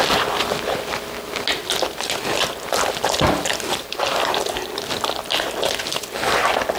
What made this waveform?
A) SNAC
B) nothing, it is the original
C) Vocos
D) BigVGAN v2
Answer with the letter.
B